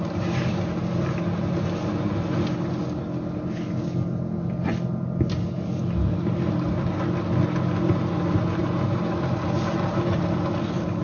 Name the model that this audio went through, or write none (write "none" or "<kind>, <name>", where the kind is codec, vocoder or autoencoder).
none